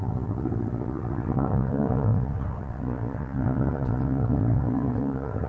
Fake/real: fake